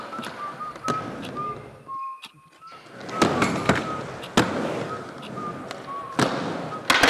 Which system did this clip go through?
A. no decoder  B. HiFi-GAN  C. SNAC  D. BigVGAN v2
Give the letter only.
A